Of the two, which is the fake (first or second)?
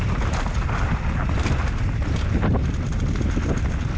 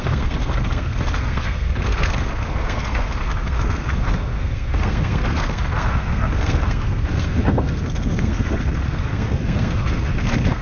second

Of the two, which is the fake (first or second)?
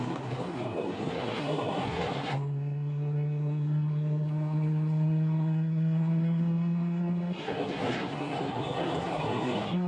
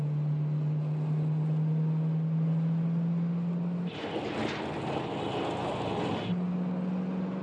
first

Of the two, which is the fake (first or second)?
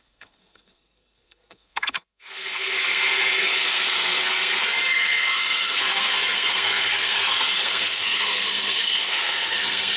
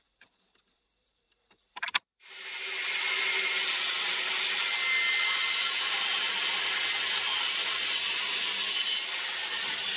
first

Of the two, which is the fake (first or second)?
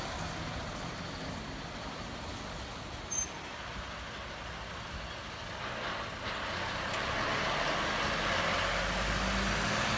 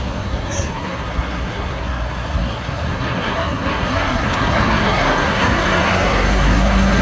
second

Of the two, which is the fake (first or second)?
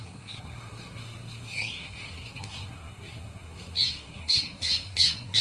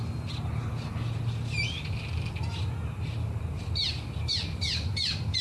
first